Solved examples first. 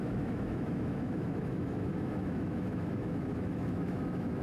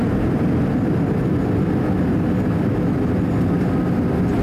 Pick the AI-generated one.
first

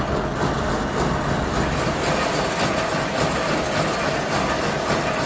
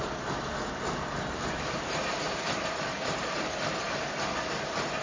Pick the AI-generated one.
second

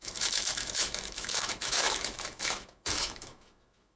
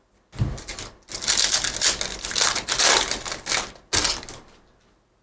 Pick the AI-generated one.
first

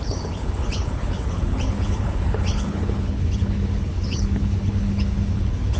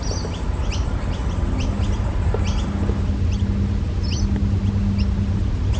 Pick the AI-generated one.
first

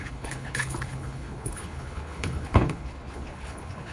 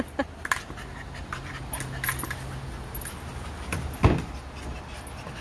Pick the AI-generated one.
first